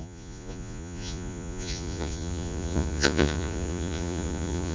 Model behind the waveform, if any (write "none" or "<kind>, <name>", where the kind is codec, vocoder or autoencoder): vocoder, Vocos